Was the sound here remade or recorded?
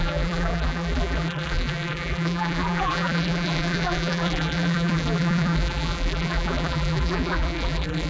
remade